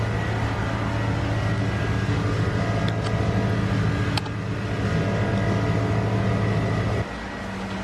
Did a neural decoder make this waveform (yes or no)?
no